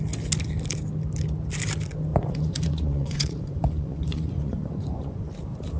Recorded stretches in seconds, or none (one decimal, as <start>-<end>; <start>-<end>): 0.0-2.1; 5.3-5.8